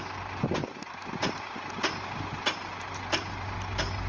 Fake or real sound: real